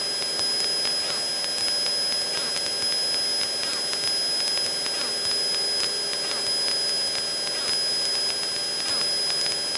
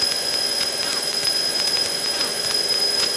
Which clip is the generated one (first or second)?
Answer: second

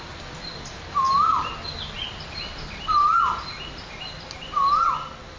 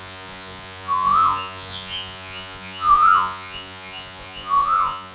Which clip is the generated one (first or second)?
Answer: second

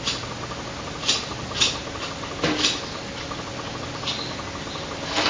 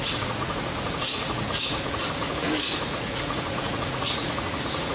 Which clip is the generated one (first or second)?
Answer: second